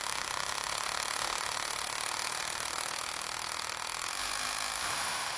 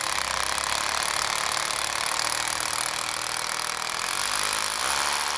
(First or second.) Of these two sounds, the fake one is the first